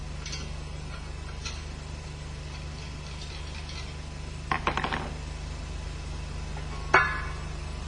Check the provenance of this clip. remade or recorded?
recorded